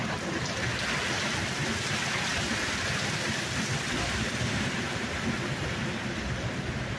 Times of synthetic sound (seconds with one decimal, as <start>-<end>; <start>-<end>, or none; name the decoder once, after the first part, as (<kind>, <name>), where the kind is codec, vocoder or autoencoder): 2.3-6.5 (vocoder, BigVGAN v2)